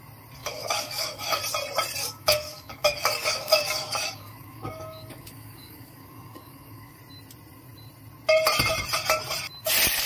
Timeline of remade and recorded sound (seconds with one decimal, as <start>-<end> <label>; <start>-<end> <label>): 0.0-0.4 recorded; 0.4-1.4 remade; 1.4-2.0 recorded; 2.0-7.0 remade; 7.0-10.1 recorded

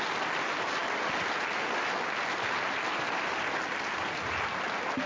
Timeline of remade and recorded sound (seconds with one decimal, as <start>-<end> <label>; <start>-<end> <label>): 0.0-5.1 recorded

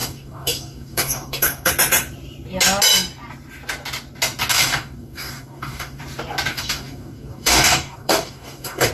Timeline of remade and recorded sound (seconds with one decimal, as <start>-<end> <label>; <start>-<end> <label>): 0.0-1.7 remade; 1.7-4.5 recorded; 4.5-6.0 remade; 6.0-6.5 recorded; 6.5-8.9 remade

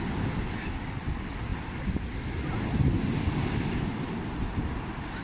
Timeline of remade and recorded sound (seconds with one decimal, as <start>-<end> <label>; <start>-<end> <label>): 0.0-5.2 recorded

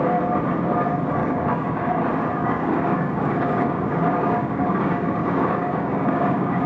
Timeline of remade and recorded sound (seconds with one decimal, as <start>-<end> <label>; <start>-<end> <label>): 0.0-1.2 recorded; 1.2-1.9 remade; 1.9-2.4 recorded; 2.4-6.7 remade

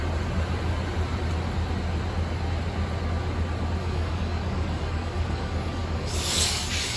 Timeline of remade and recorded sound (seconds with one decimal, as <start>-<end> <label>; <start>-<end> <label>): 0.0-3.8 recorded; 3.8-7.0 remade

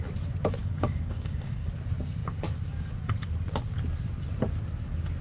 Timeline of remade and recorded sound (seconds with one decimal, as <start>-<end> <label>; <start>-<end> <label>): 0.0-0.6 recorded; 0.6-1.7 remade; 1.7-5.2 recorded

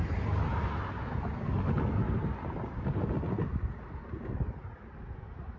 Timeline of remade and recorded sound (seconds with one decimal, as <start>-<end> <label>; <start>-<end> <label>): 0.0-5.6 recorded